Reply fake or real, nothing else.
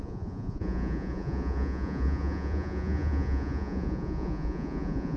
fake